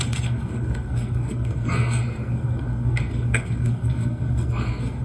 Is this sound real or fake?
fake